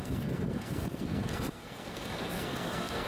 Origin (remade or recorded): remade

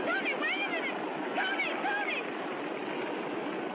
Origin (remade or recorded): recorded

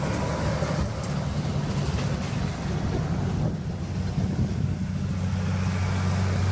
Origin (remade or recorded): recorded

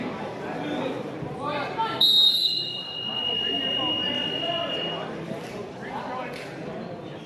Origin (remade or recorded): remade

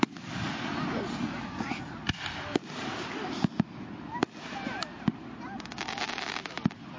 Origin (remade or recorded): recorded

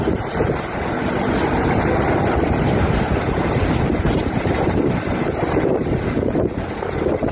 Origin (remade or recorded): remade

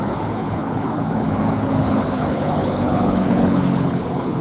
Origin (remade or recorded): remade